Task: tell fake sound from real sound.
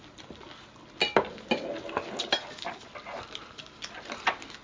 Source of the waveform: real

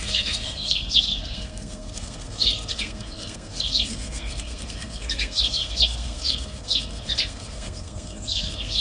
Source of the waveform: fake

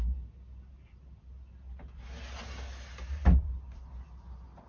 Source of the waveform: real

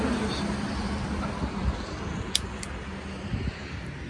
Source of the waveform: real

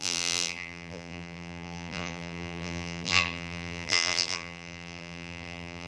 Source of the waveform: fake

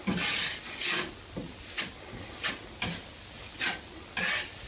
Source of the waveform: real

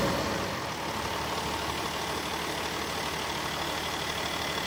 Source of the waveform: real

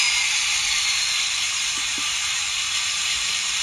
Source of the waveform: fake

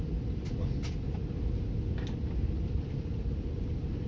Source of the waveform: real